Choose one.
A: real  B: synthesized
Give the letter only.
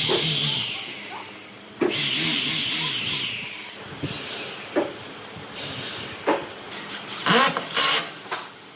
A